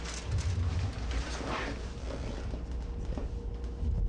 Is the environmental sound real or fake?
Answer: real